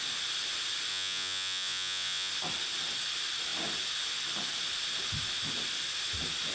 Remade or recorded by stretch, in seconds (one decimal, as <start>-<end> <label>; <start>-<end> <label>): 0.0-0.9 recorded; 0.9-2.3 remade; 2.3-6.5 recorded